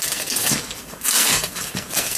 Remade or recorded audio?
remade